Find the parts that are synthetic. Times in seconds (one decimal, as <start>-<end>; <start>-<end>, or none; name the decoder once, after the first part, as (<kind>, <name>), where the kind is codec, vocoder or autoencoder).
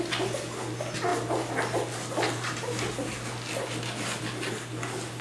none